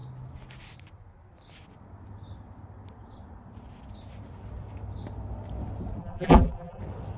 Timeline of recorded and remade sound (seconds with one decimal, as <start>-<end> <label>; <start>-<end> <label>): 0.0-6.0 recorded; 6.0-6.8 remade; 6.8-7.2 recorded